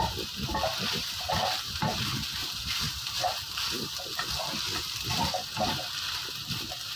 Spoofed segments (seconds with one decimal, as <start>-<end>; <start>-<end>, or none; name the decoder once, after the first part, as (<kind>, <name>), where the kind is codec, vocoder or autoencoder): 0.0-4.7 (vocoder, BigVGAN v2)